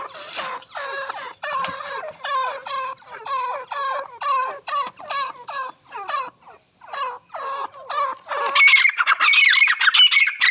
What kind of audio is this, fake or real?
real